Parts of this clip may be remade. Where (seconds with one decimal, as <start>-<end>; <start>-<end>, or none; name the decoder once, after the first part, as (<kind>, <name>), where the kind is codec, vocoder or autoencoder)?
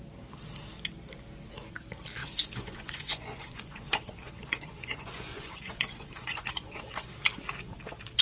2.2-7.1 (vocoder, Vocos)